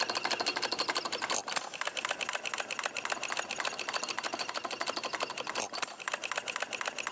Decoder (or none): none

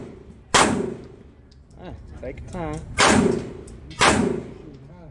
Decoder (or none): none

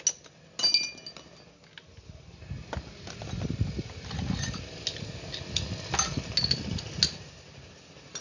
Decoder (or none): none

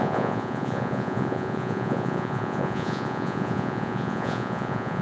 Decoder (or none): vocoder, Vocos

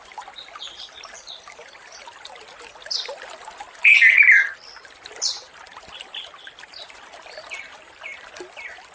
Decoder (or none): none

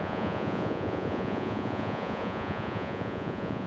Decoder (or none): vocoder, Vocos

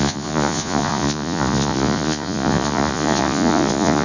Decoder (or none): vocoder, Vocos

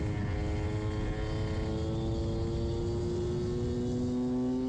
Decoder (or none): none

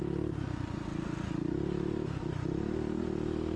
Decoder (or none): none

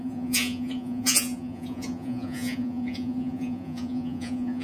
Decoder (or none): vocoder, Vocos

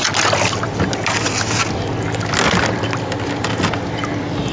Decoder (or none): none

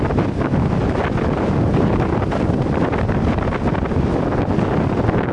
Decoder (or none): none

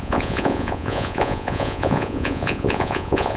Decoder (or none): vocoder, Vocos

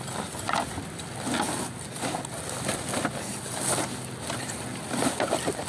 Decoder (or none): none